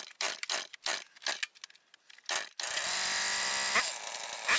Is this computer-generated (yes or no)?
no